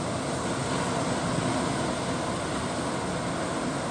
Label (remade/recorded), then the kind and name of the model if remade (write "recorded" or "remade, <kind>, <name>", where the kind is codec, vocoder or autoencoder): recorded